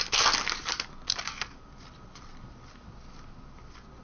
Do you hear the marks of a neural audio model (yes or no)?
no